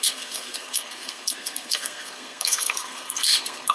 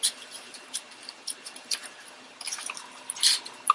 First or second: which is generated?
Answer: first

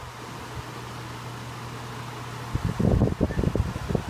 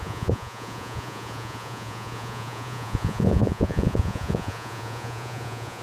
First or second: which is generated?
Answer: second